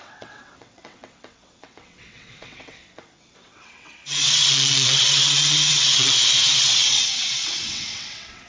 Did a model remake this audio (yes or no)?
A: yes